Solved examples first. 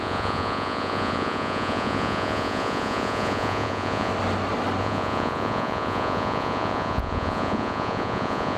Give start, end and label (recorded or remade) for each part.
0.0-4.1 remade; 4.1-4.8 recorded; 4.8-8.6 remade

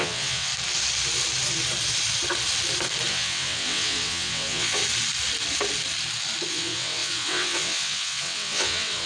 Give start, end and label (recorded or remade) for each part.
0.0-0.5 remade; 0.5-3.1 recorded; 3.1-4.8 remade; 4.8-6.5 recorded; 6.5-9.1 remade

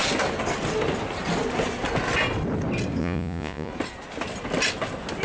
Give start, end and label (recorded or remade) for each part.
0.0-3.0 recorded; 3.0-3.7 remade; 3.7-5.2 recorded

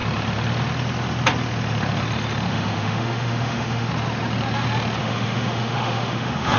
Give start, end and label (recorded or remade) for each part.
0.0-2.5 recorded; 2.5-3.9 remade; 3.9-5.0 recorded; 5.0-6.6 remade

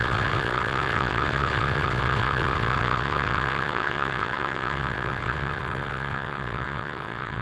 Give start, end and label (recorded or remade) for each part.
0.0-7.4 remade

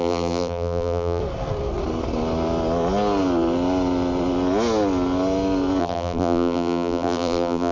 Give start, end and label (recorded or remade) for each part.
0.0-1.2 remade; 1.2-5.8 recorded; 5.8-7.7 remade